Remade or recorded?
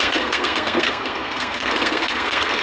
remade